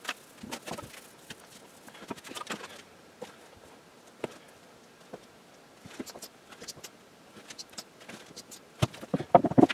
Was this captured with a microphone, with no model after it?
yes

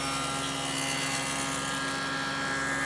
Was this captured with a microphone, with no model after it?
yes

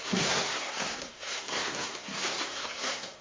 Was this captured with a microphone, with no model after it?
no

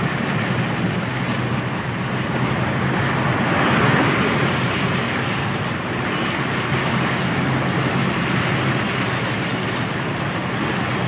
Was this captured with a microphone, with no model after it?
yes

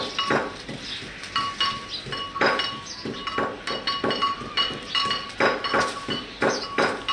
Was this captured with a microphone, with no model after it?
yes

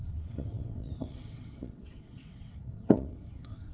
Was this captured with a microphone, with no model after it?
no